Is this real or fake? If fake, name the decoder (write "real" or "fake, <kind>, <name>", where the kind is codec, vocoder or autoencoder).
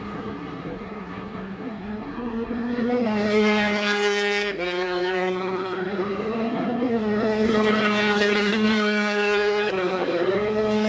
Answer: fake, codec, SNAC